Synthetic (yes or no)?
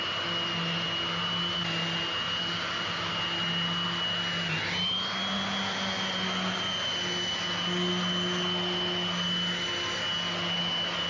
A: no